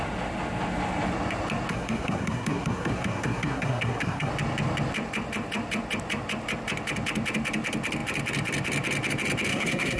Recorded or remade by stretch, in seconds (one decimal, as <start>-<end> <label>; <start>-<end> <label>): 0.0-1.7 recorded; 1.7-4.3 remade; 4.3-9.5 recorded; 9.5-10.0 remade